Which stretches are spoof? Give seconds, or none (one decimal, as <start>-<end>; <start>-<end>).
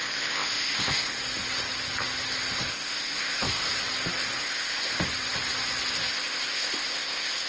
0.0-1.2; 2.7-3.7; 4.4-4.9; 6.1-7.5